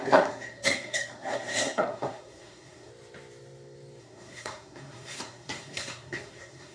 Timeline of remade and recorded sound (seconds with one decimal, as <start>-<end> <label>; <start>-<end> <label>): 0.0-2.9 remade; 2.9-4.0 recorded; 4.0-6.7 remade